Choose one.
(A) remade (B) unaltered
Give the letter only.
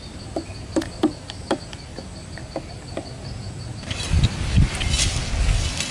B